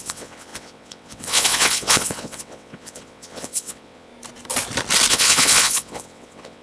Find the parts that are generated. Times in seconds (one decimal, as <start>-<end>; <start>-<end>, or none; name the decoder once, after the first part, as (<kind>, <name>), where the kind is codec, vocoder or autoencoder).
0.0-4.1 (vocoder, WaveNeXt); 5.1-6.6